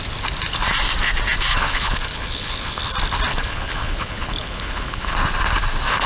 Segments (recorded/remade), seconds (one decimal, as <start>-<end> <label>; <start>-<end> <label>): 0.0-1.5 recorded; 1.5-2.8 remade; 2.8-3.3 recorded; 3.3-5.1 remade; 5.1-6.1 recorded